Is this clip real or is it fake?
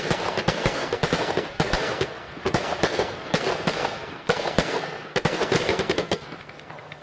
fake